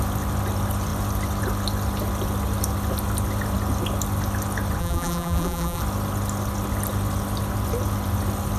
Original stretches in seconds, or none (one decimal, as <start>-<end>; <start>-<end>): 0.0-4.8; 5.8-8.6